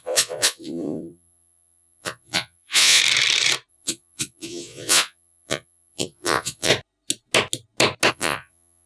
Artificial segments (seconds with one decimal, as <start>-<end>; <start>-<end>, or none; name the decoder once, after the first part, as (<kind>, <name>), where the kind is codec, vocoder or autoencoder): 0.0-3.0 (vocoder, Vocos); 3.7-6.7; 8.1-8.9